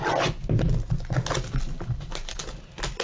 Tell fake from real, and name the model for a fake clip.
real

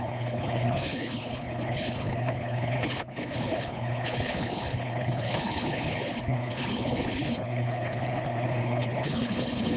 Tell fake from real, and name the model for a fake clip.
fake, codec, HILCodec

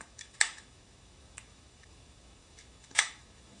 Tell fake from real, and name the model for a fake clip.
fake, autoencoder, DAC-VAE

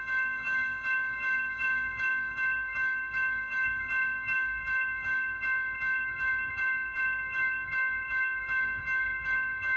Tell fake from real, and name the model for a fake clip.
fake, autoencoder, DAC-VAE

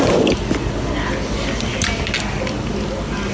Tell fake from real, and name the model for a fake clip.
real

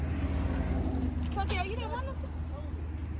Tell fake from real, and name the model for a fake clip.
real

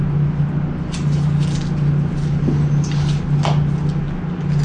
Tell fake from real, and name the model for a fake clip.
real